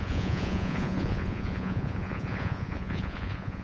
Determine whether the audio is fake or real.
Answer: fake